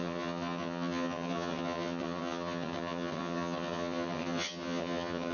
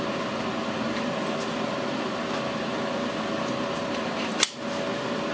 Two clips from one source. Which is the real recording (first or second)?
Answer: second